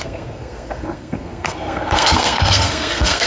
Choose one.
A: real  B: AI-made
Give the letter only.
B